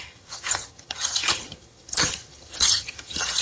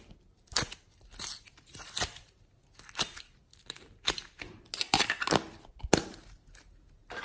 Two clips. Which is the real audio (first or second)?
second